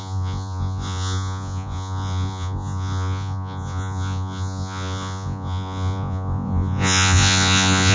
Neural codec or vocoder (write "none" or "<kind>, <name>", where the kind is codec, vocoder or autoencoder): vocoder, Vocos